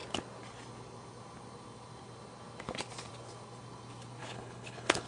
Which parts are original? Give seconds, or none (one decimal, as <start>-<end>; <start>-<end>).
0.0-4.2